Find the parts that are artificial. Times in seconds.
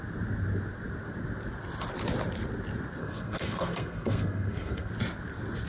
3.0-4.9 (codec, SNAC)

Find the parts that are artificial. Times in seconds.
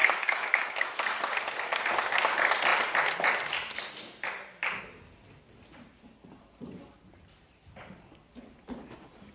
0.0-1.0 (autoencoder, DAC-VAE)